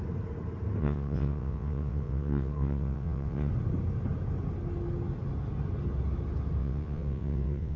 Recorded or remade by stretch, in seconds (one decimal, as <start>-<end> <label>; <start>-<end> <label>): 0.0-0.8 recorded; 0.8-3.5 remade; 3.5-6.6 recorded; 6.6-7.8 remade